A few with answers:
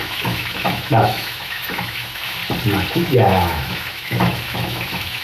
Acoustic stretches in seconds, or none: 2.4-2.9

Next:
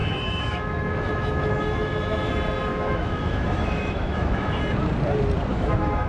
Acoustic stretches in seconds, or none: 2.3-2.7; 4.6-5.5

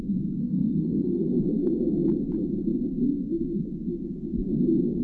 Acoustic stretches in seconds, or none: 0.0-0.4; 1.3-5.0

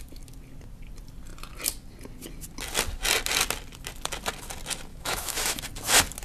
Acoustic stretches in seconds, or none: 0.0-4.9; 5.6-6.2